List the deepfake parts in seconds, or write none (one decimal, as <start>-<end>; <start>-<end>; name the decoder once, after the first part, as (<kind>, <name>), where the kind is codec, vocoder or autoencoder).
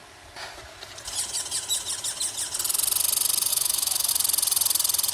3.5-4.1 (autoencoder, DAC-VAE)